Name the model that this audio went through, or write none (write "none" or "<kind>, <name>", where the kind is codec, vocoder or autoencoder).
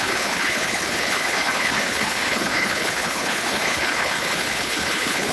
codec, HILCodec